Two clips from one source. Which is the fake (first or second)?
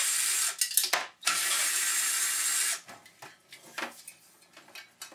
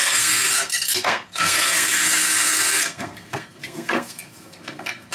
second